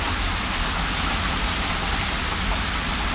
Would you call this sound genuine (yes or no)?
yes